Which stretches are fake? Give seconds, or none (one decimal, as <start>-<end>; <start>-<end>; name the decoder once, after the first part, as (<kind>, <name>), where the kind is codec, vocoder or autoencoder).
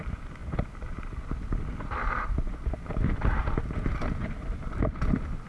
none